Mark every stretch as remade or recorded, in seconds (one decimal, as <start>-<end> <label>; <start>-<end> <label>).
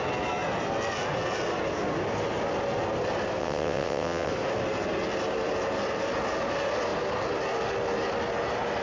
0.0-3.4 recorded; 3.4-4.3 remade; 4.3-8.8 recorded